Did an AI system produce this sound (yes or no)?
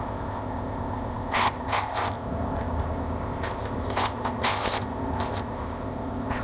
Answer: yes